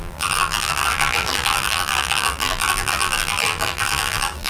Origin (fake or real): fake